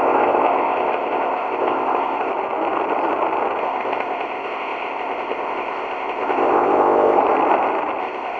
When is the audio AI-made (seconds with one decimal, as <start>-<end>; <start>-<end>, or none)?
0.0-2.3; 3.6-7.2; 8.0-8.4

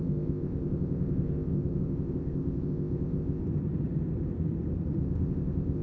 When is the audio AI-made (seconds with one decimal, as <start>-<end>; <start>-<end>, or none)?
0.0-3.4; 5.0-5.8

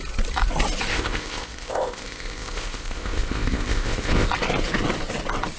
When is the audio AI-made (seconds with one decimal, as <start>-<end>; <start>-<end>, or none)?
0.9-4.3

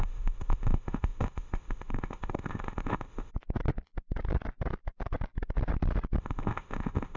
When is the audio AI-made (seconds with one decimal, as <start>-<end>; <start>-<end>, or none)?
0.0-3.3; 6.2-7.2

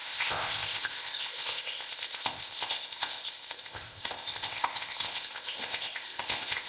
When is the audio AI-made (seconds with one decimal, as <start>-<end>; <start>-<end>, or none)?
0.0-6.7